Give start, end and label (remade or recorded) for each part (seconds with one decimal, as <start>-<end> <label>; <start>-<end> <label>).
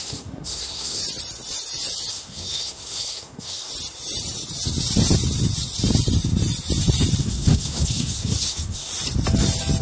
0.0-1.0 remade; 1.0-2.1 recorded; 2.1-3.7 remade; 3.7-7.2 recorded; 7.2-8.9 remade; 8.9-9.8 recorded